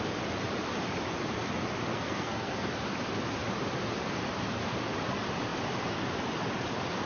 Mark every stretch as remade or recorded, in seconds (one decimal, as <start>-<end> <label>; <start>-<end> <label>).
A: 0.0-1.9 recorded; 1.9-2.7 remade; 2.7-7.1 recorded